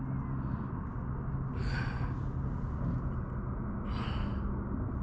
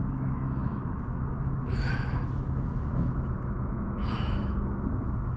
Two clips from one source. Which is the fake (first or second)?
second